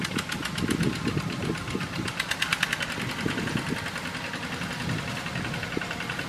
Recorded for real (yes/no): yes